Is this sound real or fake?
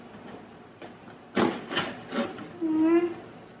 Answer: real